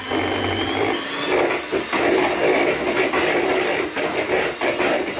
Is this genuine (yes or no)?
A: yes